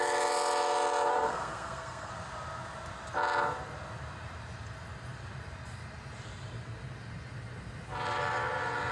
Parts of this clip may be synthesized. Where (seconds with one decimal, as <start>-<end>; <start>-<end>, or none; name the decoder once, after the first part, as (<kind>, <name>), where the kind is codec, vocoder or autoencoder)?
1.1-2.1 (codec, SNAC)